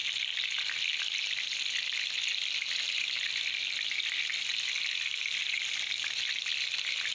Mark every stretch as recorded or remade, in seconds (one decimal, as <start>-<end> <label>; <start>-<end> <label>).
0.0-7.1 recorded